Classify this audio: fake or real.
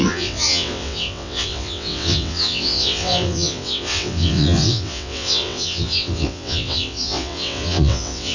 fake